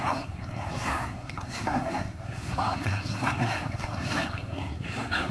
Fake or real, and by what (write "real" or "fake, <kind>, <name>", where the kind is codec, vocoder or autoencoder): fake, codec, SNAC